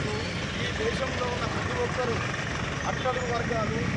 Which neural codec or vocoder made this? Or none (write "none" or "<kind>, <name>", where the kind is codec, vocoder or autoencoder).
none